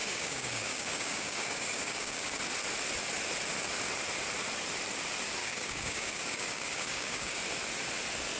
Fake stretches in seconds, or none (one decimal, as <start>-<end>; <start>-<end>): 0.0-2.4; 5.4-7.4